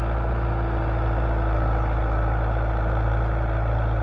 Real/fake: real